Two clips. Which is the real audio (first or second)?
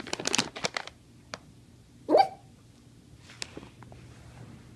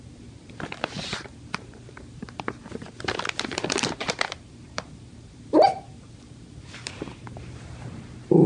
first